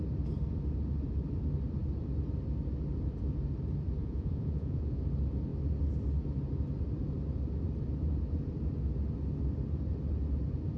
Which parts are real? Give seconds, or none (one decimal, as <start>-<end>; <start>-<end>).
0.0-4.0; 5.0-10.8